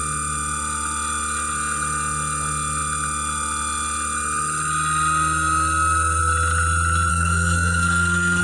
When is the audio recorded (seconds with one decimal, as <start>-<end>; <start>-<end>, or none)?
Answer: 0.0-7.1